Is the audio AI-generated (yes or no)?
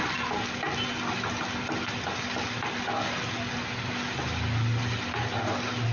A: no